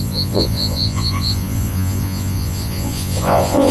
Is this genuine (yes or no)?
no